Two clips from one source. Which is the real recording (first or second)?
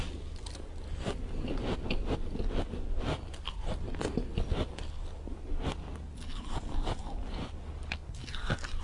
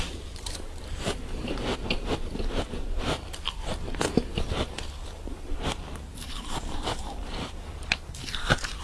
first